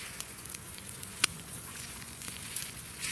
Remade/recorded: remade